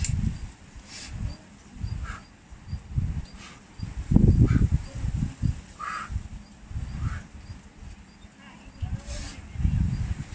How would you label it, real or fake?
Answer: real